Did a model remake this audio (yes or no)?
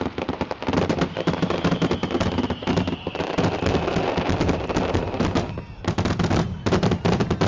no